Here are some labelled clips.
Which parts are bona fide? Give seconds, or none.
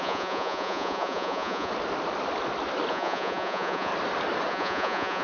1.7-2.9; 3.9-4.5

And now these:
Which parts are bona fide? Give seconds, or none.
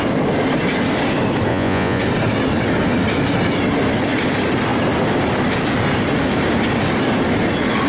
0.0-1.5; 2.0-7.9